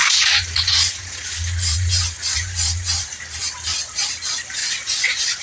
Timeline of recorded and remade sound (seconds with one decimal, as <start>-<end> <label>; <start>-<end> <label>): 0.0-3.2 remade; 3.2-4.6 recorded; 4.6-5.4 remade